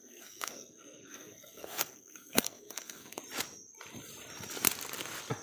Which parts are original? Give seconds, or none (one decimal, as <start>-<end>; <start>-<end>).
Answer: 3.2-5.4